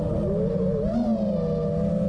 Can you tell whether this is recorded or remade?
recorded